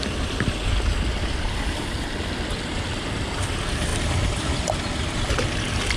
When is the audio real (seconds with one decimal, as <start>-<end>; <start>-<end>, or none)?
0.0-6.0